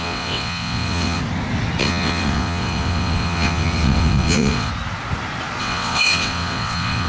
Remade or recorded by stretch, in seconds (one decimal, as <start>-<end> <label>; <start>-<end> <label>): 0.0-1.2 remade; 1.2-1.8 recorded; 1.8-4.7 remade; 4.7-5.6 recorded; 5.6-7.1 remade